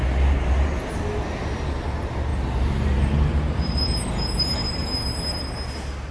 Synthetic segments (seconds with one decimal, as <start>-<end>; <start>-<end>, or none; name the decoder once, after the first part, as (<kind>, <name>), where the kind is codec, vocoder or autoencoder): 2.3-3.8 (vocoder, BigVGAN v2)